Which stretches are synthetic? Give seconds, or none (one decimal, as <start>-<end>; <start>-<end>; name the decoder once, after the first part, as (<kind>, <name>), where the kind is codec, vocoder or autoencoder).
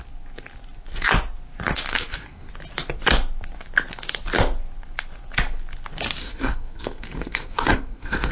1.9-2.5 (codec, SNAC); 6.2-8.3